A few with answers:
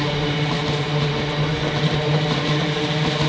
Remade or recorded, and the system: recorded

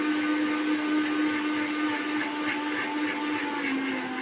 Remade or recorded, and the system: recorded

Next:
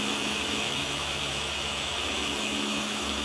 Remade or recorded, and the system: remade, autoencoder, DAC-VAE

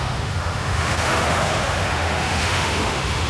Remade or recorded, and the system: remade, autoencoder, DAC-VAE